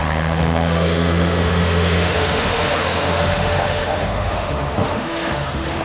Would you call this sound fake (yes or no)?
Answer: yes